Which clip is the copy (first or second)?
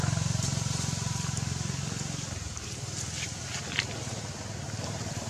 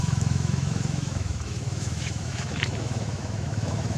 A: second